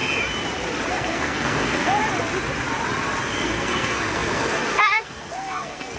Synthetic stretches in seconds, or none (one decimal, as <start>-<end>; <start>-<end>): 0.9-2.0; 3.3-6.0

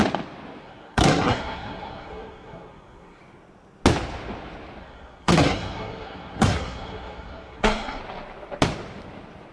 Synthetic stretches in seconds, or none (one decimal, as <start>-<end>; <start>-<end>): 0.6-3.2; 4.8-8.0

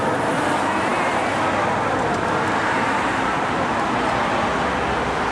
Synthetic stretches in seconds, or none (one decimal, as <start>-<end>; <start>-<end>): none

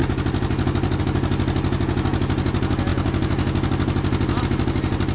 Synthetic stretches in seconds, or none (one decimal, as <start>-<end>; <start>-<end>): none

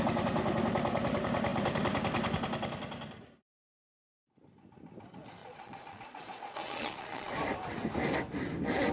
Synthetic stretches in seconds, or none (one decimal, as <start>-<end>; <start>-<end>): 5.4-7.3